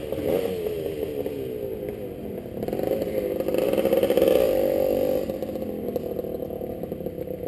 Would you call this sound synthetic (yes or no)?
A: no